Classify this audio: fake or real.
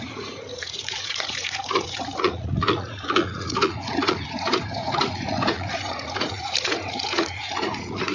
fake